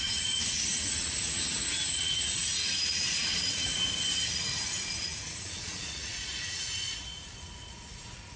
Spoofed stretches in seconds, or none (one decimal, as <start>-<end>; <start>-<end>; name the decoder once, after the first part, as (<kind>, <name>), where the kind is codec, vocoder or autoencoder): 0.0-3.7 (vocoder, Vocos); 4.3-8.4